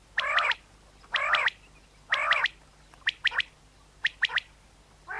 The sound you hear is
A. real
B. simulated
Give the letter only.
A